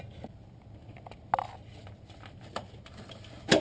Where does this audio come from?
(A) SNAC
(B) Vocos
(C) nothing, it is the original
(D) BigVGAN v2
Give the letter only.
C